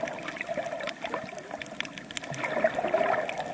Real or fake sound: real